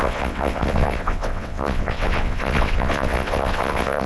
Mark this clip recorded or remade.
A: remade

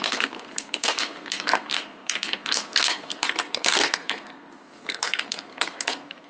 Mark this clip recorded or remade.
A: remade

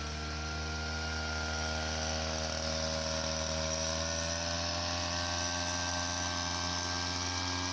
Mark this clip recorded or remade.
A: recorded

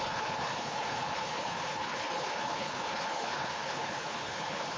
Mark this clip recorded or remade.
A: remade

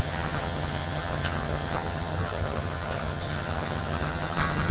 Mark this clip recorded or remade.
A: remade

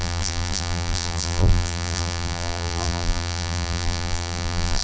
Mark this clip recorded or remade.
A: remade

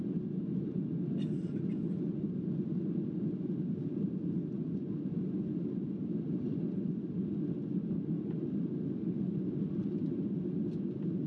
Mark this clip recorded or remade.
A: recorded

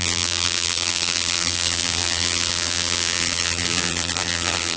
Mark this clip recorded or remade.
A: remade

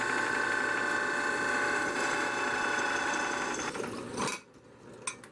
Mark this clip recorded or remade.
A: recorded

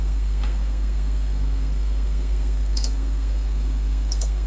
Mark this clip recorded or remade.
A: remade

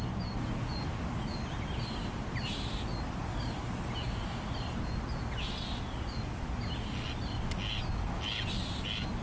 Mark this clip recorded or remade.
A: recorded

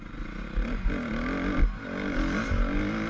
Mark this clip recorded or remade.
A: recorded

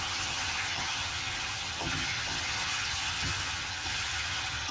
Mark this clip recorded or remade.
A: remade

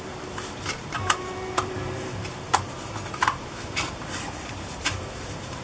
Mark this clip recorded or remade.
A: remade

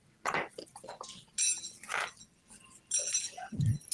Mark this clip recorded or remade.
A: recorded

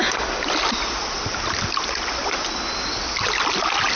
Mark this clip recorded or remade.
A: recorded